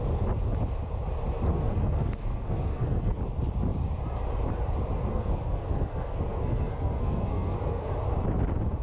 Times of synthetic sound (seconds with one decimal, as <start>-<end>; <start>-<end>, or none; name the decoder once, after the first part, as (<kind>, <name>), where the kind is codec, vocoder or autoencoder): 1.5-3.2 (codec, SNAC); 5.1-7.9